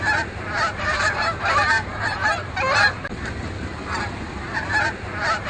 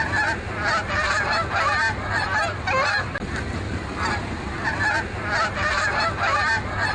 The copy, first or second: first